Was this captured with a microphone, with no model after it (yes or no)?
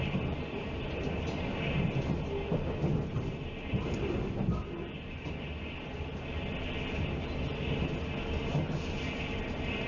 yes